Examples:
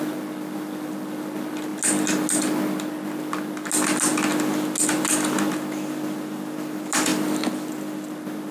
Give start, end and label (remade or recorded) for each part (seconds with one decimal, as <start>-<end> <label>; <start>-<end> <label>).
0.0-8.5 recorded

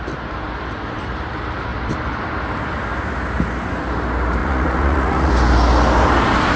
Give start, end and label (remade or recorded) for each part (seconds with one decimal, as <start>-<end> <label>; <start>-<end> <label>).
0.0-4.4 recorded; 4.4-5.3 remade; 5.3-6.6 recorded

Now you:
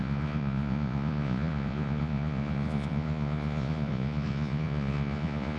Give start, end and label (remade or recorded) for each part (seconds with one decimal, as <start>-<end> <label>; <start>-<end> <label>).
0.0-5.6 remade

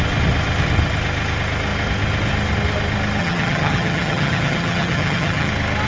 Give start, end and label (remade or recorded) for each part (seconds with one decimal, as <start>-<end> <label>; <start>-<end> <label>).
0.0-3.2 recorded; 3.2-5.5 remade; 5.5-5.9 recorded

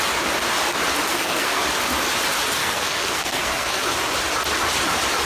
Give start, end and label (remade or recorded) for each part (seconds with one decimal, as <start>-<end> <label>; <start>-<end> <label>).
0.0-1.1 recorded; 1.1-1.6 remade; 1.6-2.6 recorded; 2.6-3.9 remade; 3.9-5.3 recorded

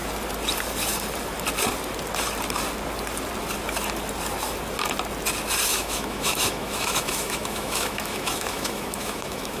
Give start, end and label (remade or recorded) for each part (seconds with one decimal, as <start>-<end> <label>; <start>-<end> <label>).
0.0-5.7 recorded; 5.7-9.6 remade